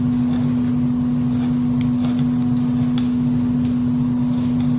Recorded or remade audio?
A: recorded